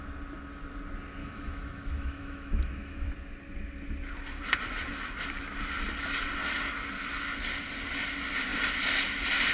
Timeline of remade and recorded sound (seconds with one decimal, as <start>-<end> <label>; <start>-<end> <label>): 0.0-1.2 recorded; 1.2-3.1 remade; 3.1-9.5 recorded